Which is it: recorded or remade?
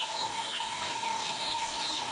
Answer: remade